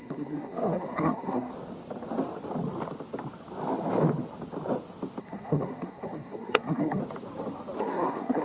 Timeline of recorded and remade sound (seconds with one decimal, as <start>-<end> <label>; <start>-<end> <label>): 0.0-1.5 remade; 1.5-5.2 recorded; 5.2-7.0 remade; 7.0-7.8 recorded; 7.8-8.4 remade